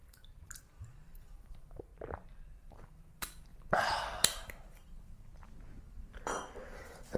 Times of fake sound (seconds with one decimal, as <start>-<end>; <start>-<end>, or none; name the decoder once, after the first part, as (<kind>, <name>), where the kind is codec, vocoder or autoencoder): 0.0-1.9 (vocoder, BigVGAN v2); 2.6-3.5; 4.2-5.3; 5.8-7.2